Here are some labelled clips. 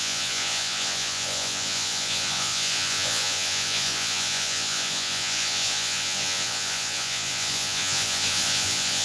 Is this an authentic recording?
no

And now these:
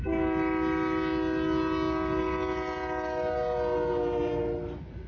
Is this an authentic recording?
yes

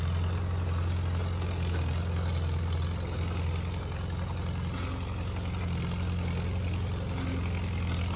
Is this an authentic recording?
yes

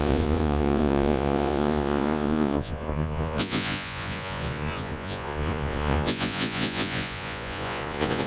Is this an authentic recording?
no